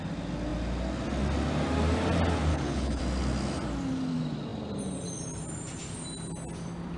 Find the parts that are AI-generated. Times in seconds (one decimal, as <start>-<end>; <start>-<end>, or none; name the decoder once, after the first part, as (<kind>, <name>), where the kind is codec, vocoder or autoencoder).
2.5-3.0 (codec, HILCodec)